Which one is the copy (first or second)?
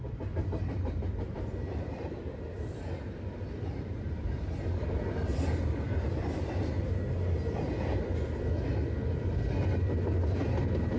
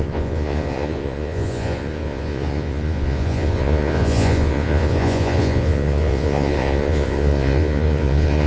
second